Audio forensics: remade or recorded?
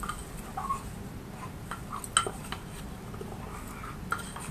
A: recorded